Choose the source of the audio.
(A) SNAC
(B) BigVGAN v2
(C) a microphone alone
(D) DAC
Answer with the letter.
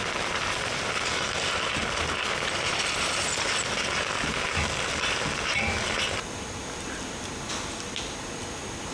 C